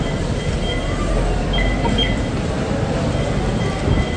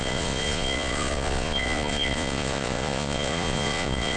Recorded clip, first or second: first